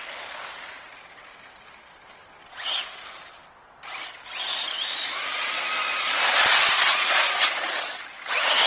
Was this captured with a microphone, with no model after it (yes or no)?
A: yes